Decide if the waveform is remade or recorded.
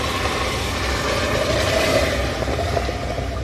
recorded